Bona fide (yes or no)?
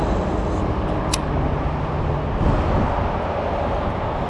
yes